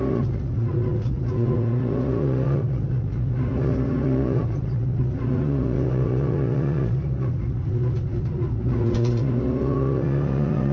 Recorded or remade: remade